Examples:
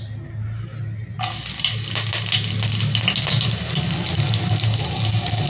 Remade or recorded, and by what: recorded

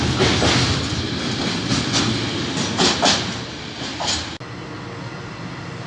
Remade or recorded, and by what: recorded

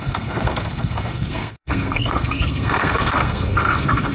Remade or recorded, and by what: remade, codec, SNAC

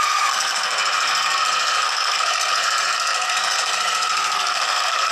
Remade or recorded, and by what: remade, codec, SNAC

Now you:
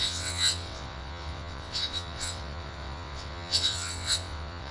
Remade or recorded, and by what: remade, vocoder, WaveNeXt